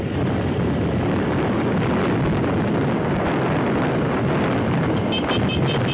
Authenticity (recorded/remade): recorded